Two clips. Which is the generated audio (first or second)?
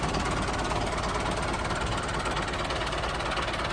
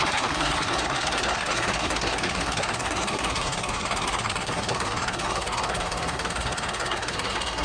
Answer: second